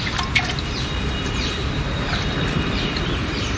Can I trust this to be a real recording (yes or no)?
no